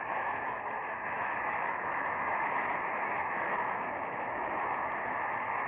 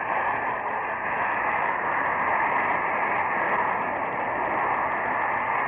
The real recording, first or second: second